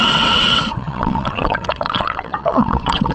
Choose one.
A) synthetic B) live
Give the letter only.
A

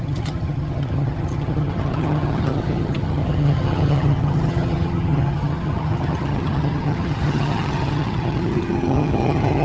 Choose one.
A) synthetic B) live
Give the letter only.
A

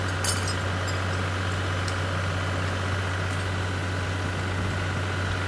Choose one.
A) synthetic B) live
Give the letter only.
B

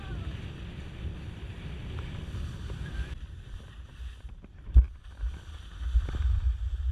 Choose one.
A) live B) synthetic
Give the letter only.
B